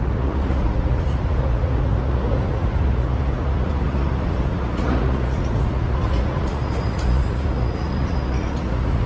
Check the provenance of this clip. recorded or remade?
remade